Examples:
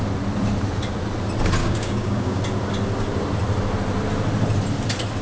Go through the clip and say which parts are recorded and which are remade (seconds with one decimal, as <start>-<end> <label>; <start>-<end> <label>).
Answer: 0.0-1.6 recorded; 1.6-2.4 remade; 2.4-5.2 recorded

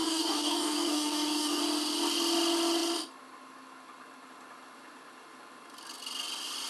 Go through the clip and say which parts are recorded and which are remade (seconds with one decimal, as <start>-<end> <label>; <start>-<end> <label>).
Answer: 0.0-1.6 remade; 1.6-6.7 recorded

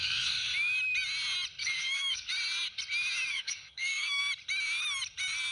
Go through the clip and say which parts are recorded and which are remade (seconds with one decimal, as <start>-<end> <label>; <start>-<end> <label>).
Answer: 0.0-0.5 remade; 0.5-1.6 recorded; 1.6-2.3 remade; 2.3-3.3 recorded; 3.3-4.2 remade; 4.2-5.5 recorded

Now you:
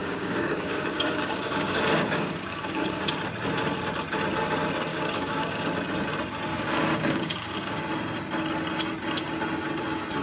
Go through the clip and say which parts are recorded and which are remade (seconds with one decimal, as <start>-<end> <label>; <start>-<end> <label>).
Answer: 0.0-3.0 remade; 3.0-4.9 recorded; 4.9-5.7 remade; 5.7-6.5 recorded; 6.5-7.8 remade; 7.8-10.2 recorded

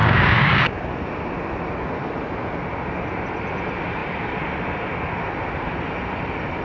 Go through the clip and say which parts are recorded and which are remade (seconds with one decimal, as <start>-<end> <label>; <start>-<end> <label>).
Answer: 0.0-0.9 remade; 0.9-6.6 recorded

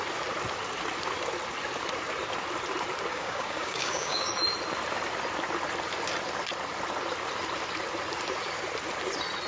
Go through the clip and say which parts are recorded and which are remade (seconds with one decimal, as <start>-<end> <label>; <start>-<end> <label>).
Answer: 0.0-3.1 recorded; 3.1-4.3 remade; 4.3-9.5 recorded